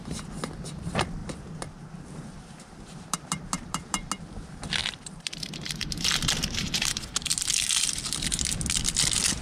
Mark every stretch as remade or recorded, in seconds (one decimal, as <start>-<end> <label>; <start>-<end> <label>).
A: 0.0-1.2 recorded; 1.2-4.1 remade; 4.1-4.8 recorded; 4.8-7.5 remade; 7.5-9.4 recorded